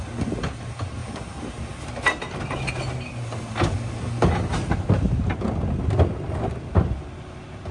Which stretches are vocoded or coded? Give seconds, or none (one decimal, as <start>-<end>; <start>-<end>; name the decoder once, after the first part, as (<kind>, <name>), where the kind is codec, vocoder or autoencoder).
none